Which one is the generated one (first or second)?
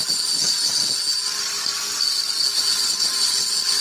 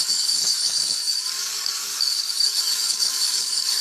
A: second